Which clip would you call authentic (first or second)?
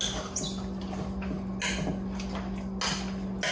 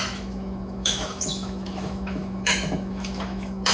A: first